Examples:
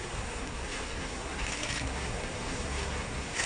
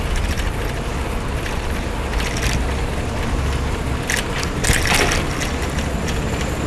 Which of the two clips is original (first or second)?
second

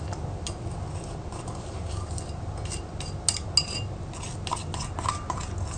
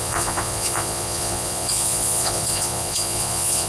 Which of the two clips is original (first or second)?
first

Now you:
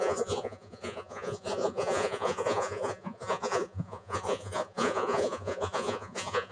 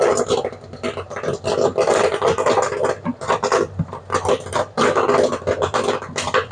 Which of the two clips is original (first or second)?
second